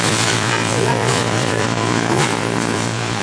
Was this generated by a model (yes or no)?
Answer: yes